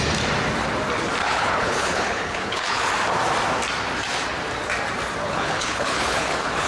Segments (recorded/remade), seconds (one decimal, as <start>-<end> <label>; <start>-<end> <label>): 0.0-1.2 recorded; 1.2-2.9 remade; 2.9-5.2 recorded; 5.2-6.7 remade